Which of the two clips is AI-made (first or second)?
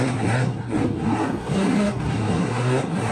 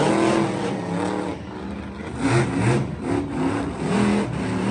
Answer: first